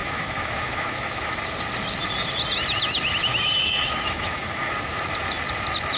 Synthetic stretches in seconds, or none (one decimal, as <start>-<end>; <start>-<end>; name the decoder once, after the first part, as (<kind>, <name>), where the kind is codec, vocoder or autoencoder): 0.0-1.4 (autoencoder, DAC-VAE); 3.3-4.7